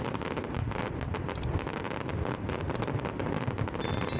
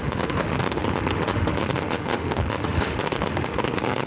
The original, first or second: first